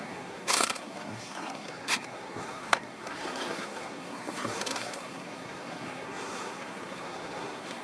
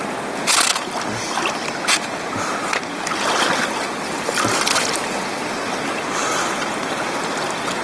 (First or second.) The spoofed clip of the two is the first